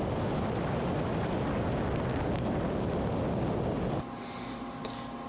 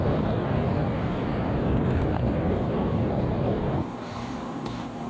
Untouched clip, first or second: first